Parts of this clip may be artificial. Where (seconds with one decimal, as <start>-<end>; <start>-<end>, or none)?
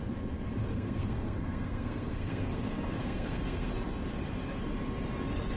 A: 0.7-2.6; 3.0-3.7